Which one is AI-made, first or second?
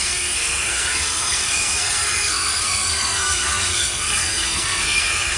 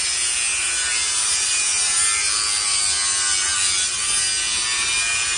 first